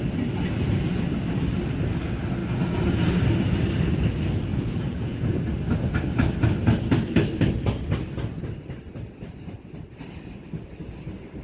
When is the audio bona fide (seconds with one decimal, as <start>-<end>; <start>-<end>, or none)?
0.0-4.5; 5.4-11.4